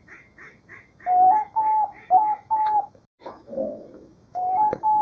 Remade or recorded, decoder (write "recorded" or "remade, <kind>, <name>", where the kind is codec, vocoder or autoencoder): remade, autoencoder, DAC-VAE